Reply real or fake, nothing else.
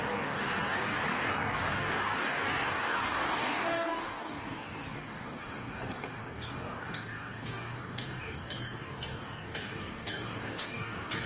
fake